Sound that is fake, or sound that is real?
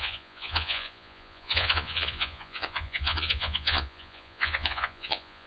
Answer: fake